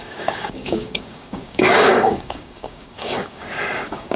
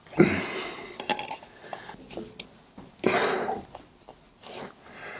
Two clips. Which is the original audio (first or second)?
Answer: second